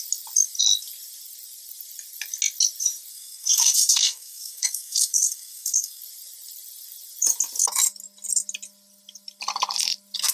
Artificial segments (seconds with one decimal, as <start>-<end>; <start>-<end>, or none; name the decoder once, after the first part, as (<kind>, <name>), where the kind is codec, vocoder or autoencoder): 3.1-6.0 (codec, SNAC)